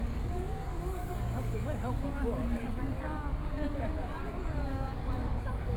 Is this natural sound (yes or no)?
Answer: no